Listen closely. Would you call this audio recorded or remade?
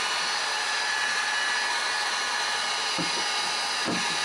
recorded